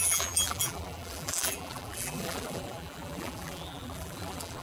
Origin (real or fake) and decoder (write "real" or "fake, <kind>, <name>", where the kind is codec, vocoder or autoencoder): fake, vocoder, BigVGAN v2